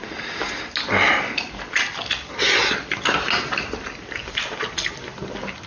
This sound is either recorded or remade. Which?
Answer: recorded